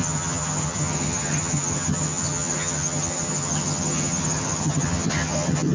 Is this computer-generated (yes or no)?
yes